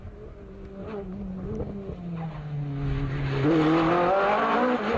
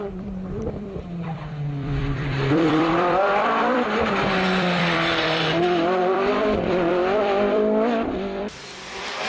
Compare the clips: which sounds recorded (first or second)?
first